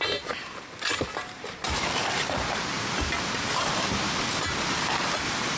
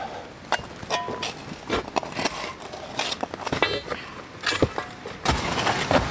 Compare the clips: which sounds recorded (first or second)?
second